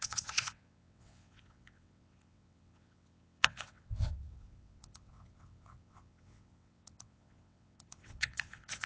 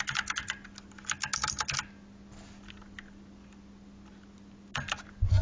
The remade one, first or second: first